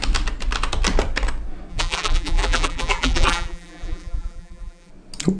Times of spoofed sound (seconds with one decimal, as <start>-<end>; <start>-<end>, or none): 1.7-4.9